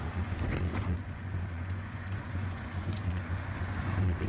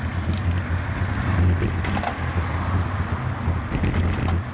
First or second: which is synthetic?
first